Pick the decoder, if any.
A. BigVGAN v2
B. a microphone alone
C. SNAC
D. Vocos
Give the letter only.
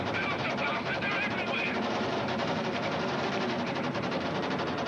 A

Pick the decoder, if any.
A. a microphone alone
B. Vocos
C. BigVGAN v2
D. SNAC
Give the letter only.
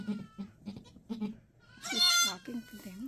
A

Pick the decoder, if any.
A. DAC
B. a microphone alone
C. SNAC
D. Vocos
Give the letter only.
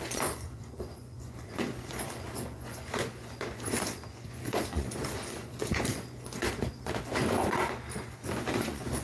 D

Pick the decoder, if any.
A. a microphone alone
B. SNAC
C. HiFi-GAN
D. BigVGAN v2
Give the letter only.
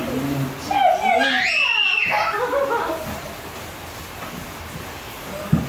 A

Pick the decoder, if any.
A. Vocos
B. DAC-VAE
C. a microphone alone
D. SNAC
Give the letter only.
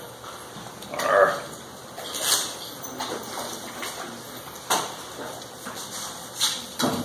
C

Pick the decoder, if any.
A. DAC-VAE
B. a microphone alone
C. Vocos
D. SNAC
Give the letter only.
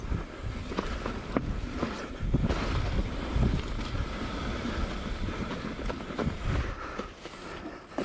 B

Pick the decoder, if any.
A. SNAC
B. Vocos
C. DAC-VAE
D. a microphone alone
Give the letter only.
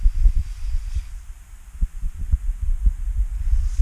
D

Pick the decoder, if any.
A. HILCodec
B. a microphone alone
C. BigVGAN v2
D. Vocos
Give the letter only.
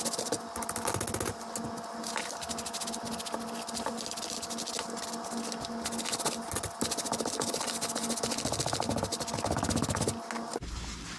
B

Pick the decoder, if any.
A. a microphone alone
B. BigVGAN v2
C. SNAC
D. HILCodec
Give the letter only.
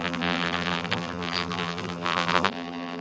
B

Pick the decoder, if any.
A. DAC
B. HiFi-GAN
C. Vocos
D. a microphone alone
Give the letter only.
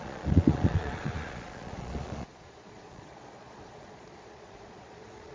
C